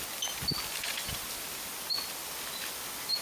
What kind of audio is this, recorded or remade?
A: recorded